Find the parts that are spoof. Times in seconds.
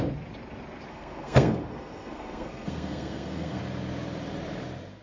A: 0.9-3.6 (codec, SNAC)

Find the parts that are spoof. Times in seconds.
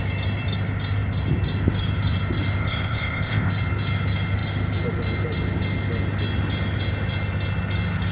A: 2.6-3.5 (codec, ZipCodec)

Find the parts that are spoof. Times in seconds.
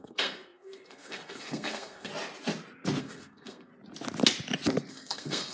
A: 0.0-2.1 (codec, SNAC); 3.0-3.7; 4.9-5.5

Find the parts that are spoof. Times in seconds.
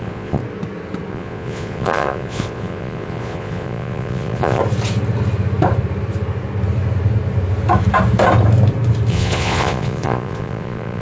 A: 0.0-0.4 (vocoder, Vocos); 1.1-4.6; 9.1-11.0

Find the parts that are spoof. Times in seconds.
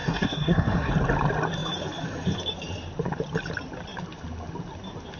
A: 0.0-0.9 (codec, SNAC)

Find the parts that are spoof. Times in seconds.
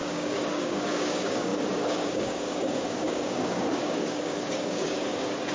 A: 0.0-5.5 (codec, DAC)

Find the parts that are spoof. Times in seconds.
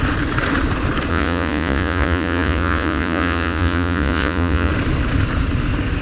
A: 1.1-4.7 (vocoder, Vocos)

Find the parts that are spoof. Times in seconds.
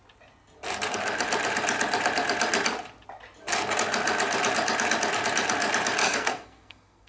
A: 6.0-7.1 (codec, SNAC)